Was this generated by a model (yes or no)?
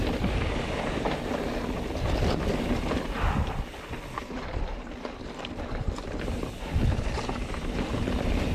no